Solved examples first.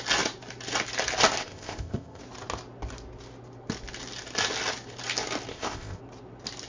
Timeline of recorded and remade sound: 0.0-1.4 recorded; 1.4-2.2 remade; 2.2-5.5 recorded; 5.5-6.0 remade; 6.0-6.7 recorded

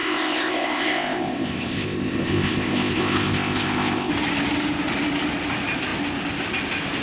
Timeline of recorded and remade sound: 0.0-4.1 remade; 4.1-7.0 recorded

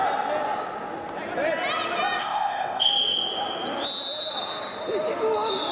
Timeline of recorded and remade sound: 0.0-2.2 recorded; 2.2-2.9 remade; 2.9-5.7 recorded

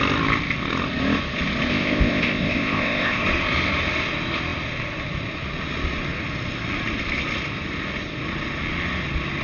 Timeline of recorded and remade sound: 0.0-1.7 recorded; 1.7-3.2 remade; 3.2-9.4 recorded

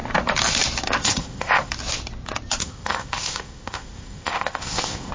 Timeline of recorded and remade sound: 0.0-1.0 recorded; 1.0-1.7 remade; 1.7-2.6 recorded; 2.6-5.1 remade